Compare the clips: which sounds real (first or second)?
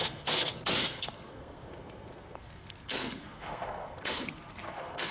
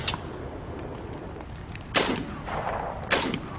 second